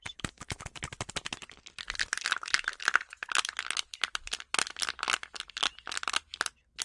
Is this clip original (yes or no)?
yes